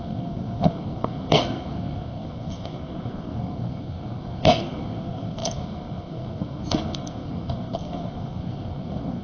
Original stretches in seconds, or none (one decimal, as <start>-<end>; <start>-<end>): none